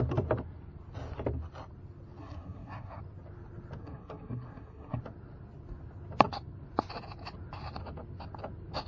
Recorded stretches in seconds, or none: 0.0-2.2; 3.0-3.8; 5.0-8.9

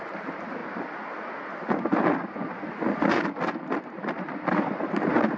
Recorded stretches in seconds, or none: 0.6-3.8

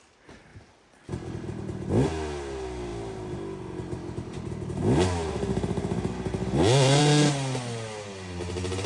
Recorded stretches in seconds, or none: 0.0-8.9

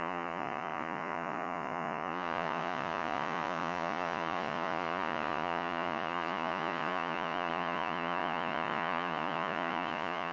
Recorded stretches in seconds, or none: none

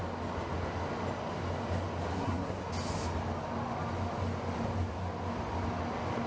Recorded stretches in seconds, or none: 0.0-2.1; 2.7-6.3